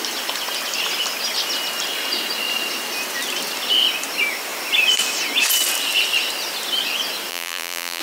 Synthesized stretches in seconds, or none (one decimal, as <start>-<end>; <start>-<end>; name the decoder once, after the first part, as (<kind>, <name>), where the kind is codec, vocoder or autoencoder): 7.3-8.0 (vocoder, BigVGAN v2)